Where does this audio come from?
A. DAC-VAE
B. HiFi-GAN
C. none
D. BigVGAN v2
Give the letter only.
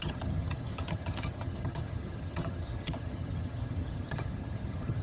B